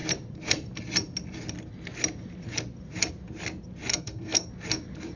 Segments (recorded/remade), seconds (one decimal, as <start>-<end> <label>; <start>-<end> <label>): 0.0-3.9 recorded; 3.9-4.5 remade; 4.5-5.2 recorded